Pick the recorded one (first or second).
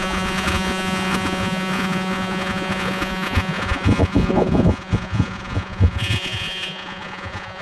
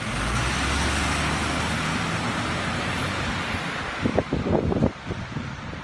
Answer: second